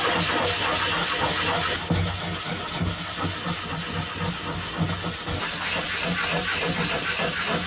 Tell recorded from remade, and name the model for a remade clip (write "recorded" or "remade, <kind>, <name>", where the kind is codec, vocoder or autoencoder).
recorded